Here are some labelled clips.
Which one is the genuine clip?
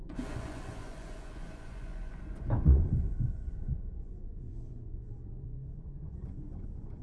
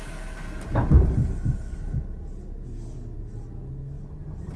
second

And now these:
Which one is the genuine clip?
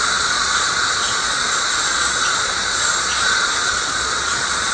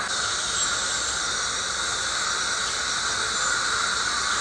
second